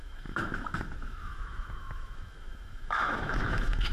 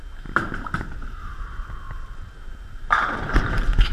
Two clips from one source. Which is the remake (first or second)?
first